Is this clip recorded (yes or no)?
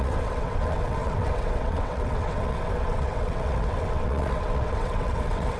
no